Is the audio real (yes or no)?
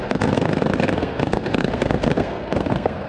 no